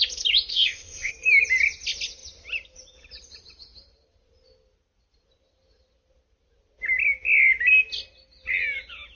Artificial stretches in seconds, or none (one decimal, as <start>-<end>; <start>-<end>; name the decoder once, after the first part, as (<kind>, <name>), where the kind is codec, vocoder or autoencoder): 0.5-1.1 (codec, ZipCodec)